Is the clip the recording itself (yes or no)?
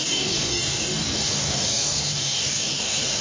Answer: no